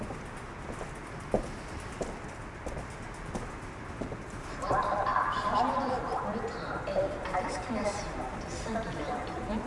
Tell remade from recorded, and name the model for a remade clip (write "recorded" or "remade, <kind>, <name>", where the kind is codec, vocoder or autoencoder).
remade, vocoder, BigVGAN v2